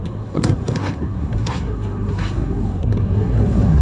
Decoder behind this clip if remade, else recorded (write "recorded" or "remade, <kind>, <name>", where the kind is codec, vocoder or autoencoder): remade, codec, SNAC